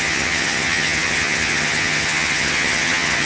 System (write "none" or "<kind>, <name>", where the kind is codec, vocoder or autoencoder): vocoder, HiFi-GAN